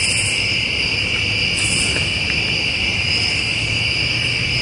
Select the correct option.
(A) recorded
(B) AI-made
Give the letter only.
A